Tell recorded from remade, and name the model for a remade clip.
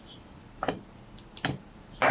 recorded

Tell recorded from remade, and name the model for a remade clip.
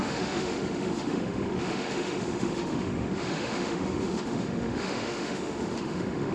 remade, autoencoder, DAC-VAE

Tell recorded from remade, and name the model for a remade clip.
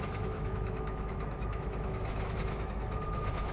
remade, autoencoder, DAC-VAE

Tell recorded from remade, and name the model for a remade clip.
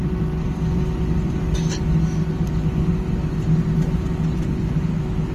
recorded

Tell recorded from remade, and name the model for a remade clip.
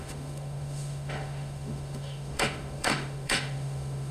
remade, autoencoder, DAC-VAE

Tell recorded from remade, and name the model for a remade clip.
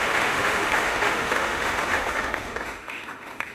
remade, autoencoder, DAC-VAE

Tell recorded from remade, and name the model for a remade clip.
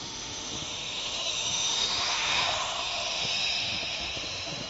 remade, autoencoder, DAC-VAE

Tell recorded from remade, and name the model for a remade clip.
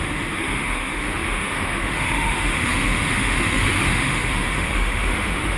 remade, autoencoder, DAC-VAE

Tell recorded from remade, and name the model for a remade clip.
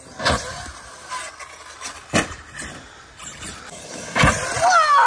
recorded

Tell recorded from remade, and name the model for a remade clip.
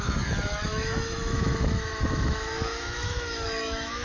remade, autoencoder, DAC-VAE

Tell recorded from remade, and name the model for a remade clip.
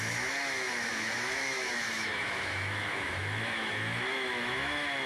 remade, autoencoder, DAC-VAE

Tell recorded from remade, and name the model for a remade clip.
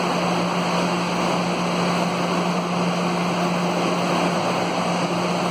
recorded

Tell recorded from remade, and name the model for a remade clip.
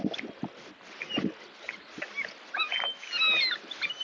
recorded